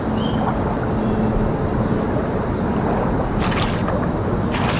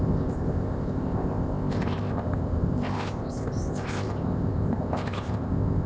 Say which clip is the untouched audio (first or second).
first